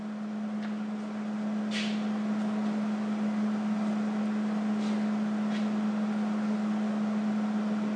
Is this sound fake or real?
real